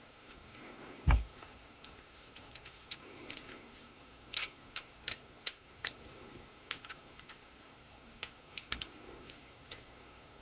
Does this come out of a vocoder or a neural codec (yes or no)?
yes